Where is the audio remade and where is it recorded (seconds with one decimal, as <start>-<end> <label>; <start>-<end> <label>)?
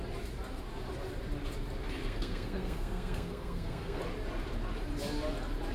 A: 0.0-2.0 recorded; 2.0-4.0 remade; 4.0-5.7 recorded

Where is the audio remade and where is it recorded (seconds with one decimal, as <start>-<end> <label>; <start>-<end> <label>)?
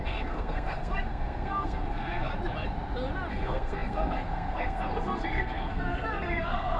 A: 0.0-2.3 remade; 2.3-3.3 recorded; 3.3-6.8 remade